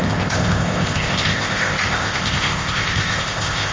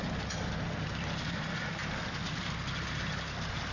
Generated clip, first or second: first